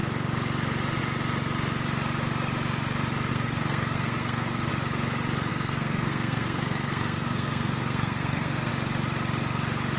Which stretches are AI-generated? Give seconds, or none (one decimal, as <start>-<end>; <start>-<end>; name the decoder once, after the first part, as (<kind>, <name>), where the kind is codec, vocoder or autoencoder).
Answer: 3.3-4.7 (codec, SNAC); 5.5-8.7